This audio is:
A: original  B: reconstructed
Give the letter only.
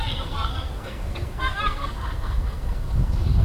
B